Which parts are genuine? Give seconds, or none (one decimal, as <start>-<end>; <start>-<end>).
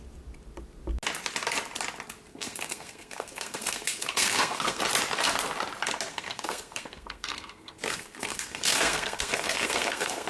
0.0-2.3; 4.8-6.1